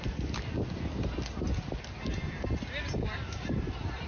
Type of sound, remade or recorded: recorded